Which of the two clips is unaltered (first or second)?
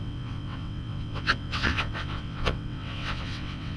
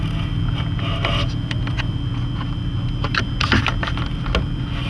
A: second